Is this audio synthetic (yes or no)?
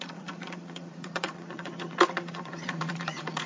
yes